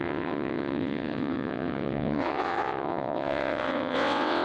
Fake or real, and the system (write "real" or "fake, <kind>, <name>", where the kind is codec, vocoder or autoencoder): fake, vocoder, WaveNeXt